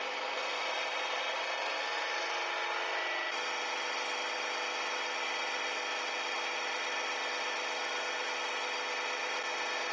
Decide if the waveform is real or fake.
real